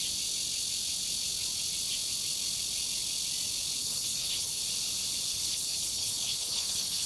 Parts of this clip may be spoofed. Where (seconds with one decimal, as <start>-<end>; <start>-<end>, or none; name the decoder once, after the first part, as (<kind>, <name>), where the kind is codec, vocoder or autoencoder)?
3.8-4.6 (codec, HILCodec); 5.3-7.1